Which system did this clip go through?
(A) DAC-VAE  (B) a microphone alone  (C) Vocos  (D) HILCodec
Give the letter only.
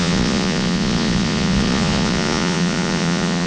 C